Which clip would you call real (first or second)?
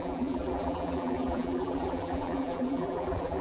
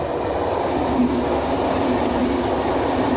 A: second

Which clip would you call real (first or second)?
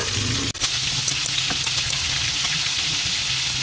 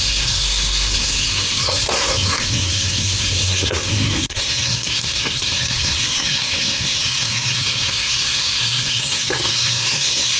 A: first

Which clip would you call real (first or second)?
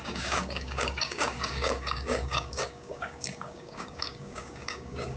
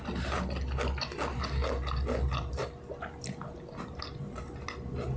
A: second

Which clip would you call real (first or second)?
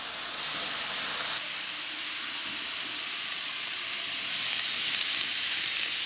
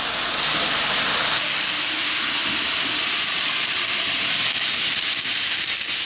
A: first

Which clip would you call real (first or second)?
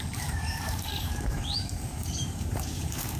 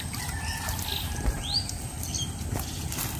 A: second